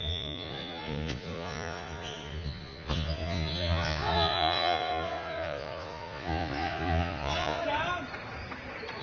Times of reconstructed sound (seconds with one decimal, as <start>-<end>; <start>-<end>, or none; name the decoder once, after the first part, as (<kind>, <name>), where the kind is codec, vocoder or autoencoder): 0.0-7.6 (vocoder, Vocos)